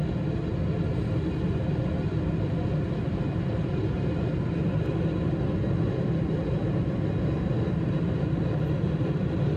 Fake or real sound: real